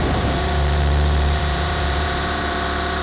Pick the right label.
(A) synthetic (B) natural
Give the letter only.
A